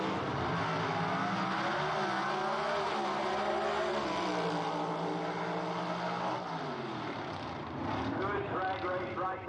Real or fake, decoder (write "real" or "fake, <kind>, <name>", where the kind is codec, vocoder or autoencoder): real